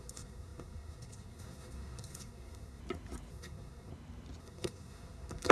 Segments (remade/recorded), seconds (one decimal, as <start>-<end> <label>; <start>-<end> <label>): 0.0-2.8 remade; 2.8-3.3 recorded; 3.3-3.9 remade; 3.9-4.4 recorded; 4.4-5.5 remade